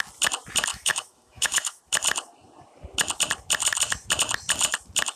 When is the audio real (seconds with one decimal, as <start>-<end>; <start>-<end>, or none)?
0.0-0.7; 1.8-5.2